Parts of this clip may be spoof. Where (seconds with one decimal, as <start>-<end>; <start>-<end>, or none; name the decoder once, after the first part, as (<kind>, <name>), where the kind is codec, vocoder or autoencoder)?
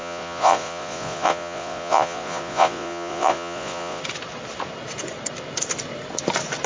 0.0-4.0 (vocoder, Vocos)